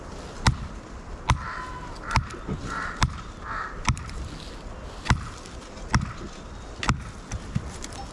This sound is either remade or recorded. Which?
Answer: recorded